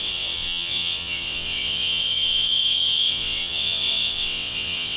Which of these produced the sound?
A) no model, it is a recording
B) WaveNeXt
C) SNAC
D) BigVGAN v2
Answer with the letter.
B